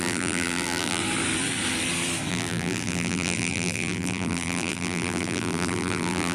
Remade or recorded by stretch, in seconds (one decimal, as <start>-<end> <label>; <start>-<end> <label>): 0.0-1.0 remade; 1.0-2.3 recorded; 2.3-6.3 remade